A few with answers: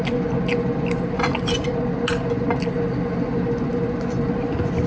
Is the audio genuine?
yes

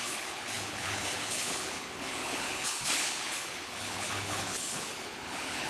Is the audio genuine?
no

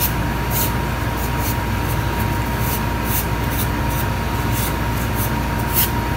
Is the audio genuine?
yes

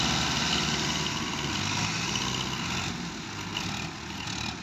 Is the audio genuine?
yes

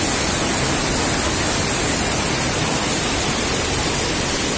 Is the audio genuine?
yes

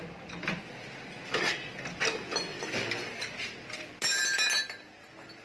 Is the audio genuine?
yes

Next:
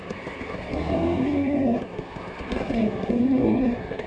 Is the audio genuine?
no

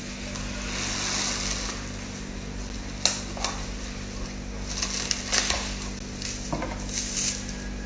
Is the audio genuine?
yes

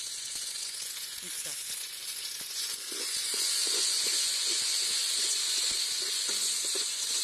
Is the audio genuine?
no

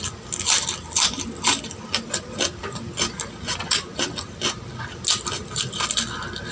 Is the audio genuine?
yes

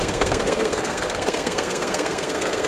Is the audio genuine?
no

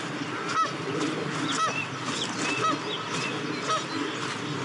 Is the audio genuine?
yes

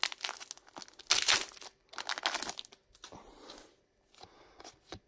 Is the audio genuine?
yes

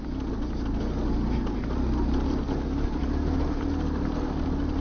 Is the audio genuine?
yes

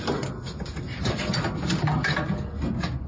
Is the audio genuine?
yes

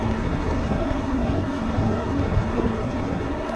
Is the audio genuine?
no